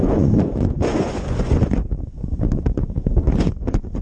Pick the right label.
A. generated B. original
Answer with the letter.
A